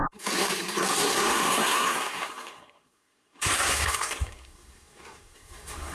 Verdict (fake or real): fake